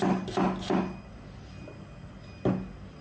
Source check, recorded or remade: recorded